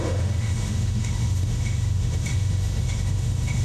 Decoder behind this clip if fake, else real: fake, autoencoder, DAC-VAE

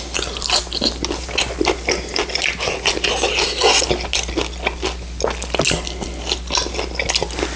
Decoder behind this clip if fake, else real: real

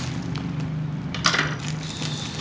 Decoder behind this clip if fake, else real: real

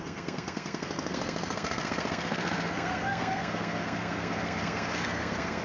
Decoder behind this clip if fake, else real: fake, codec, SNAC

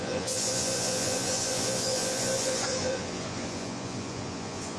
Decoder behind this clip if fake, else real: fake, vocoder, Vocos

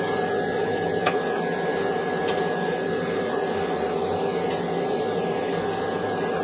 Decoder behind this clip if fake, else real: real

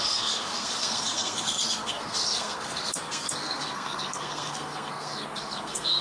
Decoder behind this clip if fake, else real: fake, codec, SNAC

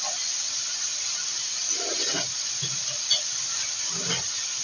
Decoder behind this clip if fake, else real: real